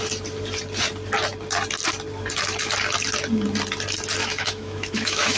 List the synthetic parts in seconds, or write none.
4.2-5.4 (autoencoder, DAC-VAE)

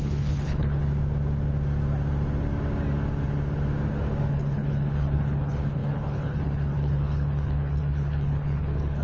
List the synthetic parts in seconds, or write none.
0.0-0.8 (codec, HILCodec); 4.3-9.0

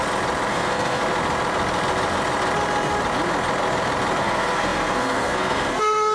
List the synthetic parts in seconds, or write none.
0.5-1.0 (codec, SNAC); 4.2-6.1

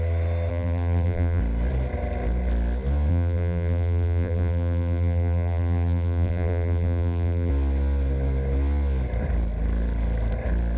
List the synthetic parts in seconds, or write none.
0.5-1.4 (vocoder, BigVGAN v2); 3.1-7.5

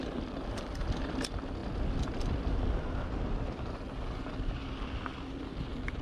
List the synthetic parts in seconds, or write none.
none

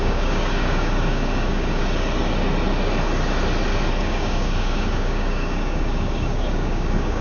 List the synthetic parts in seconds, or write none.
0.0-1.8 (codec, DAC); 4.0-7.2